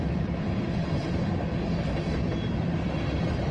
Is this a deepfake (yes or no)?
no